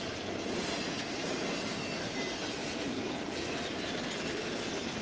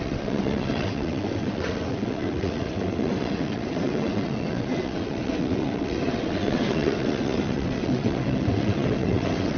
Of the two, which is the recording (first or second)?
first